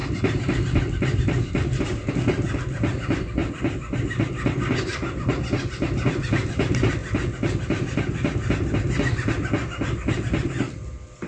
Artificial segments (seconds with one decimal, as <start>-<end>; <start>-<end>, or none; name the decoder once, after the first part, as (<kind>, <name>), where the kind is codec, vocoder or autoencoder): none